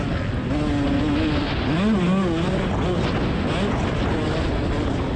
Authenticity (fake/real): real